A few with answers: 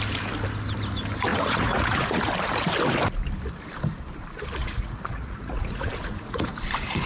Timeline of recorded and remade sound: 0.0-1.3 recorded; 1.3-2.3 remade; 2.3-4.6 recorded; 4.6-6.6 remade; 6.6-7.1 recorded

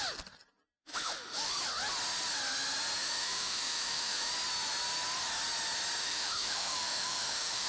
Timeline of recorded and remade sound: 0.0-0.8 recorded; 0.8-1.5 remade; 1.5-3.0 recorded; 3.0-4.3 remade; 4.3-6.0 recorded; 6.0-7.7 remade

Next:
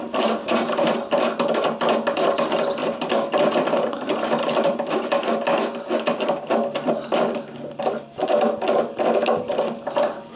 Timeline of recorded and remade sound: 0.0-10.4 recorded